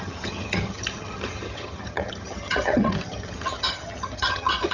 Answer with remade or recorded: remade